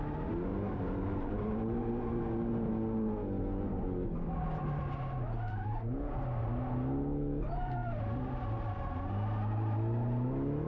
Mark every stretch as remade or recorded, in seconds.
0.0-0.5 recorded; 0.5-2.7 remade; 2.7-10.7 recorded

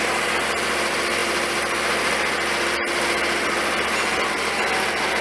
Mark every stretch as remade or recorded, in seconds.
0.0-5.2 recorded

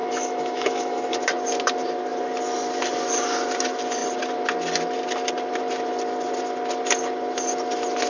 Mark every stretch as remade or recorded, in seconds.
0.0-1.2 remade; 1.2-8.1 recorded

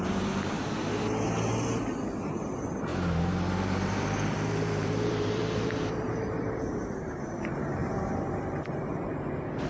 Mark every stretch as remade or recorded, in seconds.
0.0-0.6 remade; 0.6-2.2 recorded; 2.2-2.9 remade; 2.9-3.6 recorded; 3.6-9.7 remade

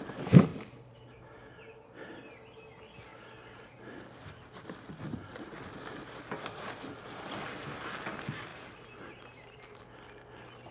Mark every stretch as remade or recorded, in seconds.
0.0-0.5 recorded; 0.5-1.6 remade; 1.6-8.5 recorded; 8.5-9.8 remade; 9.8-10.7 recorded

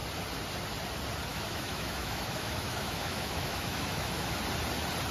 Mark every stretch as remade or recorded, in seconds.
0.0-1.3 recorded; 1.3-4.4 remade; 4.4-5.1 recorded

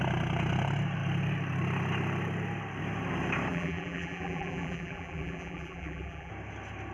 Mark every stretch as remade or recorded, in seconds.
0.0-3.5 recorded; 3.5-6.3 remade; 6.3-6.9 recorded